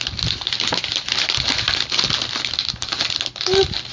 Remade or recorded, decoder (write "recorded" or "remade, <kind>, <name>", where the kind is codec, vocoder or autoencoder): recorded